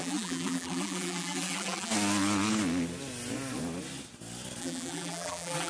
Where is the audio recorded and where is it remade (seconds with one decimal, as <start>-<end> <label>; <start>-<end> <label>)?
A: 0.0-1.9 remade; 1.9-4.6 recorded; 4.6-5.7 remade